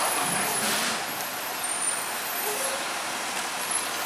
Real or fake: real